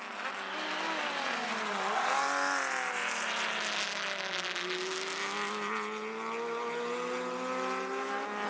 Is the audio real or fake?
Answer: real